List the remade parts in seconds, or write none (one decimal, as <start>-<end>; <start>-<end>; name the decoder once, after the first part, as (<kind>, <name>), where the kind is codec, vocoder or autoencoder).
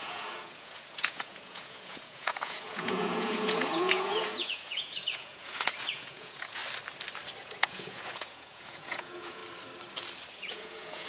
0.0-6.6 (vocoder, Vocos); 7.4-9.4; 10.5-11.1